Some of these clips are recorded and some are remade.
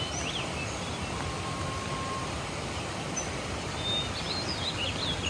recorded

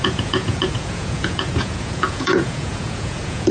remade